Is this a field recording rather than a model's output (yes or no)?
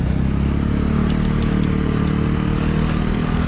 yes